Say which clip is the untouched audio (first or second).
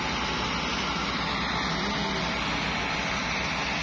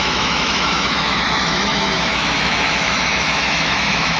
first